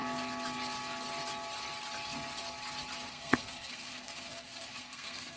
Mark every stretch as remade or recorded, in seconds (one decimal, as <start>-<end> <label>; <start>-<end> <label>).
0.0-3.1 recorded; 3.1-5.4 remade